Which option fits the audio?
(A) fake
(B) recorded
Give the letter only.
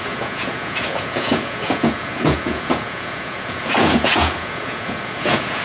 A